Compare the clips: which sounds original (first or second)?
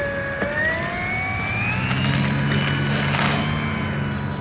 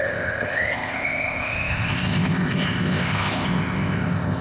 first